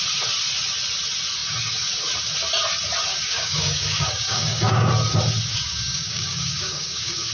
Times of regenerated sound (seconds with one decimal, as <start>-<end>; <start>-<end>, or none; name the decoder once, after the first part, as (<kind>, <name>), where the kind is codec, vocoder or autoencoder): 3.1-4.9 (codec, DAC); 5.5-7.3